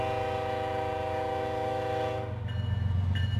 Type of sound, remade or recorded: recorded